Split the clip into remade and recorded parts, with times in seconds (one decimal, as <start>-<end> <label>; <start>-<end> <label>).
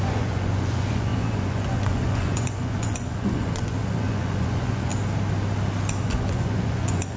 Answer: 0.0-4.9 remade; 4.9-6.0 recorded; 6.0-7.2 remade